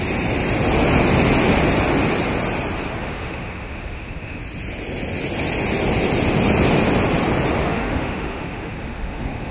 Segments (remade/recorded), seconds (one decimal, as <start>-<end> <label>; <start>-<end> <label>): 0.0-3.0 recorded; 3.0-4.4 remade; 4.4-7.6 recorded; 7.6-9.5 remade